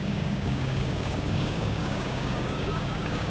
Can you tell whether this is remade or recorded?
remade